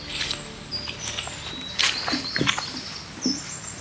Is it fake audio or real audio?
real